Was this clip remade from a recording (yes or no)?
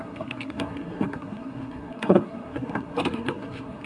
yes